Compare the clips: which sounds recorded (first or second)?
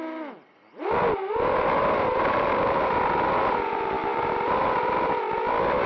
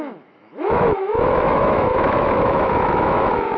first